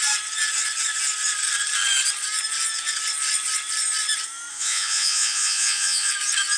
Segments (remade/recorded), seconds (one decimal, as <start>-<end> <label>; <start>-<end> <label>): 0.0-4.5 recorded; 4.5-6.1 remade; 6.1-6.6 recorded